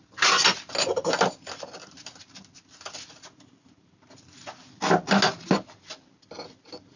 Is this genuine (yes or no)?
yes